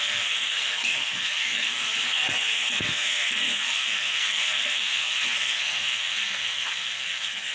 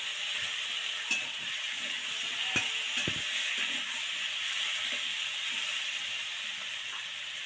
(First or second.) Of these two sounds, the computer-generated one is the first